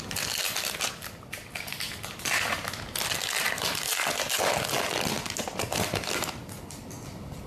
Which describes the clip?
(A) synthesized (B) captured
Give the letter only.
B